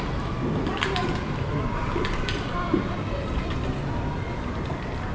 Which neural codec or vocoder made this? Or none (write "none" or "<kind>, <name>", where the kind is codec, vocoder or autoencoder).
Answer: none